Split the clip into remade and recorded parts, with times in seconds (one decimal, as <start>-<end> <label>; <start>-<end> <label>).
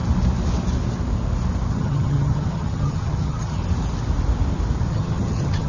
0.0-1.7 recorded; 1.7-3.6 remade; 3.6-4.9 recorded; 4.9-5.7 remade